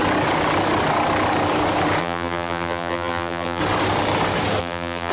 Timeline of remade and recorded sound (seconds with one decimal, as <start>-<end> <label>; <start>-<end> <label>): 0.0-2.0 recorded; 2.0-3.6 remade; 3.6-4.6 recorded; 4.6-5.1 remade